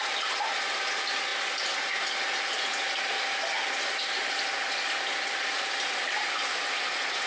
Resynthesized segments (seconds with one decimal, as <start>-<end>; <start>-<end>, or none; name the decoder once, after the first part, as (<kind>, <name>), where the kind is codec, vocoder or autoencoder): none